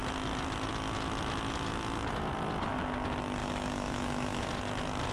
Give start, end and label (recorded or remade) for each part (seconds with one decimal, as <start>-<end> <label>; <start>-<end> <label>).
0.0-3.4 recorded; 3.4-4.5 remade; 4.5-5.1 recorded

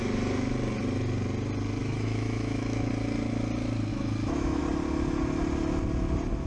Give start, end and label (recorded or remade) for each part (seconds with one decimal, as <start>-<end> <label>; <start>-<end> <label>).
0.0-1.8 recorded; 1.8-2.9 remade; 2.9-3.9 recorded; 3.9-4.6 remade; 4.6-6.5 recorded

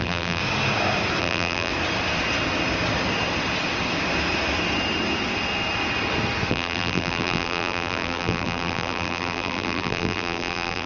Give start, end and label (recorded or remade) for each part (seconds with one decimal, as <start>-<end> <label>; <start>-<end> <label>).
0.0-0.4 remade; 0.4-1.2 recorded; 1.2-1.7 remade; 1.7-6.5 recorded; 6.5-10.9 remade

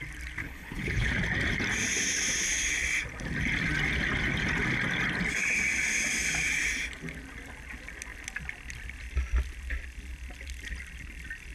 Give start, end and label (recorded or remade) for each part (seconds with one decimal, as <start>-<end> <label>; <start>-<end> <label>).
0.0-0.4 recorded; 0.4-1.1 remade; 1.1-11.5 recorded

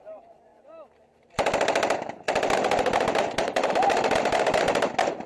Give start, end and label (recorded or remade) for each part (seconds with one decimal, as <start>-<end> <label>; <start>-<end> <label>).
0.0-5.3 recorded

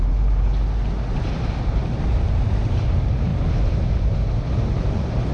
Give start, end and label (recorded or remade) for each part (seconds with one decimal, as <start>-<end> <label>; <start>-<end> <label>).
0.0-0.5 remade; 0.5-1.1 recorded; 1.1-3.3 remade; 3.3-4.5 recorded; 4.5-5.3 remade

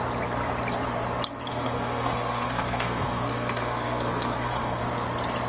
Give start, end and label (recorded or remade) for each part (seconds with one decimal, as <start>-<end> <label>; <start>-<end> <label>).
0.0-1.5 recorded; 1.5-4.8 remade; 4.8-5.5 recorded

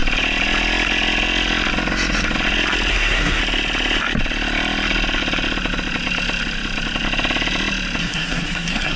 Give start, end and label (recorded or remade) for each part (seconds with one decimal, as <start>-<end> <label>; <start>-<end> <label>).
0.0-2.9 recorded; 2.9-3.4 remade; 3.4-8.0 recorded; 8.0-9.0 remade